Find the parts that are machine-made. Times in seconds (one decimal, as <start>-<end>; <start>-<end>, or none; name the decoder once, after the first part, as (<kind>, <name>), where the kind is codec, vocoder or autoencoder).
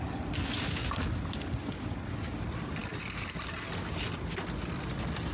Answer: none